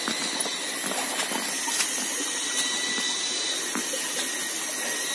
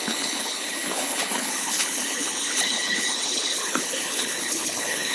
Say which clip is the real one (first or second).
first